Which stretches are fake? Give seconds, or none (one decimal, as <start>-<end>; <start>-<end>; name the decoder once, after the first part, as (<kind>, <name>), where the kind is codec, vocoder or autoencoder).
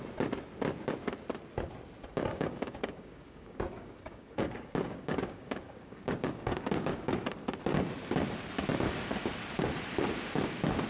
2.3-7.1 (codec, DAC)